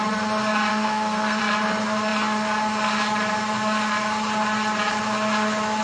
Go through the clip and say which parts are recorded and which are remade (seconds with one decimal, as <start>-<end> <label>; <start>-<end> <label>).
0.0-0.7 recorded; 0.7-1.4 remade; 1.4-5.8 recorded